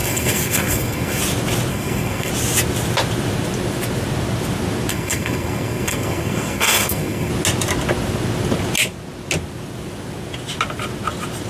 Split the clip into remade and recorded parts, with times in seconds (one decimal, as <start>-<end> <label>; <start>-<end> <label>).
0.0-1.2 remade; 1.2-1.7 recorded; 1.7-2.3 remade; 2.3-4.9 recorded; 4.9-7.3 remade; 7.3-11.5 recorded